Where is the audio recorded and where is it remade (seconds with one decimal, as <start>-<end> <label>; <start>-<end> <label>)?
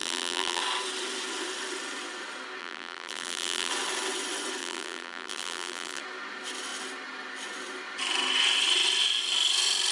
0.0-0.6 remade; 0.6-2.6 recorded; 2.6-3.7 remade; 3.7-4.6 recorded; 4.6-6.0 remade; 6.0-9.9 recorded